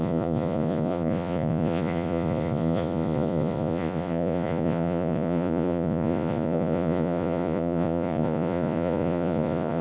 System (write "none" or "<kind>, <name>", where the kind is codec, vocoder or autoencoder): vocoder, Vocos